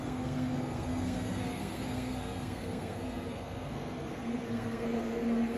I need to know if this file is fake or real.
fake